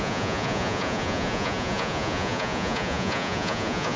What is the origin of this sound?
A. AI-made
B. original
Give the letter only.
A